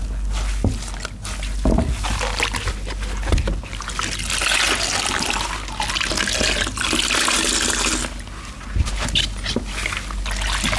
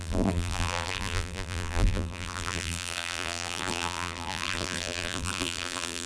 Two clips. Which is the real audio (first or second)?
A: first